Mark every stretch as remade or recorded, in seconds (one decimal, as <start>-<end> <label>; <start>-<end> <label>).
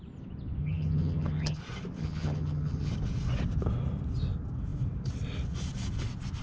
0.0-0.6 recorded; 0.6-1.6 remade; 1.6-2.0 recorded; 2.0-2.9 remade; 2.9-6.4 recorded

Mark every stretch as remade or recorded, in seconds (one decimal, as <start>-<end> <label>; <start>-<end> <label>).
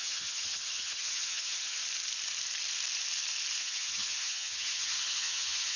0.0-1.8 remade; 1.8-3.6 recorded; 3.6-5.8 remade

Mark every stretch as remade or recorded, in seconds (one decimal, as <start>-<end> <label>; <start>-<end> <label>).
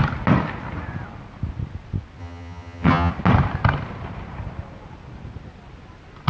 0.0-2.2 recorded; 2.2-3.1 remade; 3.1-6.3 recorded